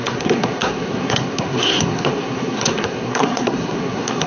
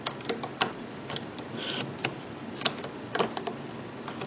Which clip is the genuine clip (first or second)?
second